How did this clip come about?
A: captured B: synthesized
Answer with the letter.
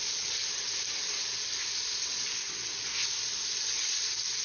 A